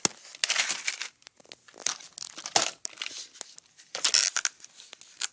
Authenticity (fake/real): real